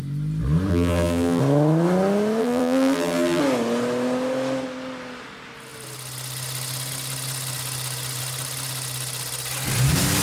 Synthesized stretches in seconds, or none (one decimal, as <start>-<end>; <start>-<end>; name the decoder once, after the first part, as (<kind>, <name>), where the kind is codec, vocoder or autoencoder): 0.7-1.4 (vocoder, BigVGAN v2); 2.4-3.4

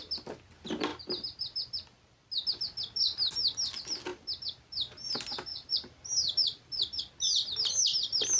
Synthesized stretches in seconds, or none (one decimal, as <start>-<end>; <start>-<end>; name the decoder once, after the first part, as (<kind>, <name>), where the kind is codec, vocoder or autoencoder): 0.9-2.3 (vocoder, BigVGAN v2); 4.1-4.6; 5.5-7.0

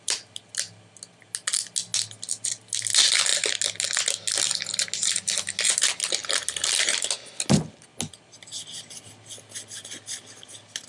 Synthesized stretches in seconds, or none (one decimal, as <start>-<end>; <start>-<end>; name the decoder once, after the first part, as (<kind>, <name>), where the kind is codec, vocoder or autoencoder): none

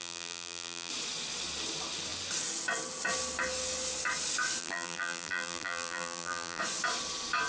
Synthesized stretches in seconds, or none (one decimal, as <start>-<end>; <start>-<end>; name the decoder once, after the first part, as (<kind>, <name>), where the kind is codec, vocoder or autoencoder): 0.0-0.9 (vocoder, BigVGAN v2); 4.6-6.6

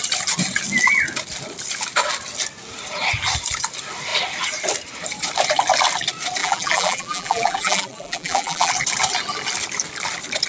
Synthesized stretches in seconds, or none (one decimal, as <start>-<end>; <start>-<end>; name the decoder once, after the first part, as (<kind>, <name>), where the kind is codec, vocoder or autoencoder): 6.4-8.7 (vocoder, BigVGAN v2)

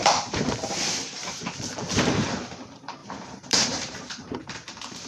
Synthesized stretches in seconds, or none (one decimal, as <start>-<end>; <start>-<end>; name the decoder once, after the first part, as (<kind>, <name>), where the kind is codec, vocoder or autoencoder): 0.0-4.6 (vocoder, BigVGAN v2)

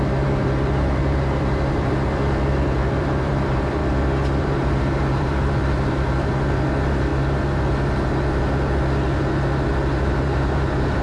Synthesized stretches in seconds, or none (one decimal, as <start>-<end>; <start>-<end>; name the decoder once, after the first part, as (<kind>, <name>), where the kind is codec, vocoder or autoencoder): 0.0-3.8 (vocoder, BigVGAN v2); 4.4-7.1; 10.0-11.0